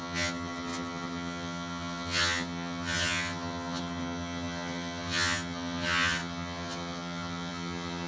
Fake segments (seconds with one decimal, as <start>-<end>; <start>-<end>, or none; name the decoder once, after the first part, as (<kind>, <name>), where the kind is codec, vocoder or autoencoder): 0.0-8.1 (vocoder, HiFi-GAN)